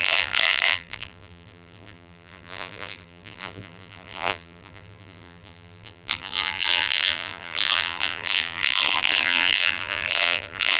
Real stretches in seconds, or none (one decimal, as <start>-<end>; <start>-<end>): none